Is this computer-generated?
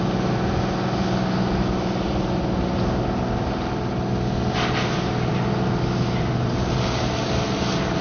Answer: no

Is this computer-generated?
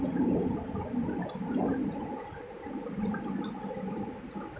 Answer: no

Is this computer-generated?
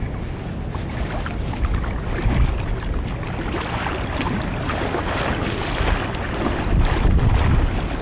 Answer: no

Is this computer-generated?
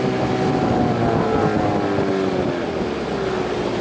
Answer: no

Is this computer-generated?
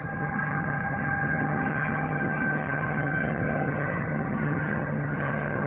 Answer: yes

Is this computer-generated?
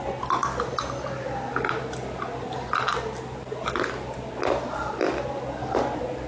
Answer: no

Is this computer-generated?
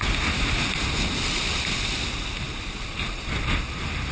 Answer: no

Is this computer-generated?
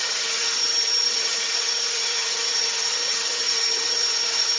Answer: yes